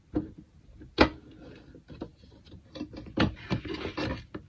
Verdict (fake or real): real